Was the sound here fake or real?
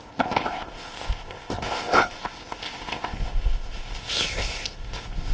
fake